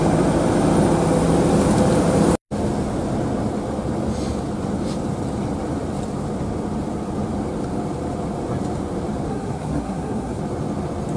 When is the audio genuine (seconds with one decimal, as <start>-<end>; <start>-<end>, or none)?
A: 0.0-9.3; 10.4-11.2